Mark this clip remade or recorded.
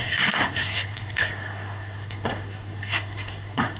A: remade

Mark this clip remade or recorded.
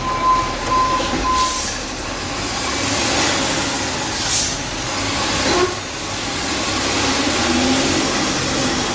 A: recorded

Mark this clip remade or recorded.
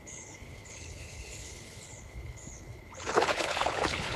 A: remade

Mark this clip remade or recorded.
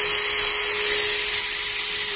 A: recorded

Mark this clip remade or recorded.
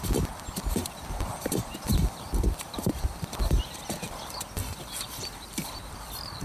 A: remade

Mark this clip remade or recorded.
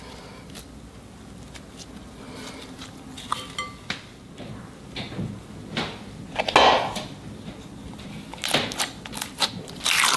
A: recorded